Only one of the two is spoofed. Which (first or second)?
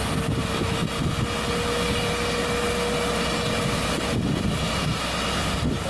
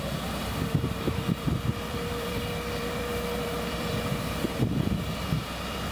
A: second